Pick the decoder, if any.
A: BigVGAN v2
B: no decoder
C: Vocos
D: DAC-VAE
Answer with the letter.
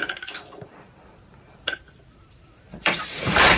A